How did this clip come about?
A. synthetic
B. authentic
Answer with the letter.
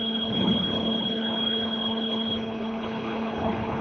A